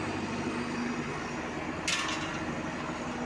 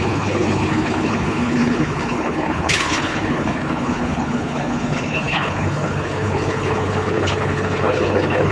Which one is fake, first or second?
second